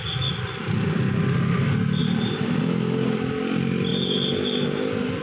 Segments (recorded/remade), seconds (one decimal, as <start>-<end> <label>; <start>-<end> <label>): 0.0-2.0 recorded; 2.0-2.6 remade; 2.6-3.9 recorded; 3.9-5.2 remade